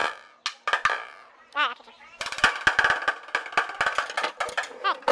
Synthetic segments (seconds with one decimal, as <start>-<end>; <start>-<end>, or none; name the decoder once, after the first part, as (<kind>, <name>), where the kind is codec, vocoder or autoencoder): none